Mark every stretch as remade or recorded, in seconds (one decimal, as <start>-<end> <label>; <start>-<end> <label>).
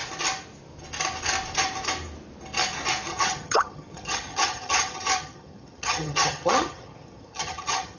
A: 0.0-3.1 recorded; 3.1-8.0 remade